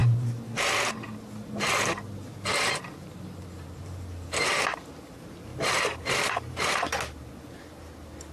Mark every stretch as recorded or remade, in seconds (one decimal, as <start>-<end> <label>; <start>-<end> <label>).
0.0-5.5 recorded; 5.5-6.6 remade; 6.6-8.3 recorded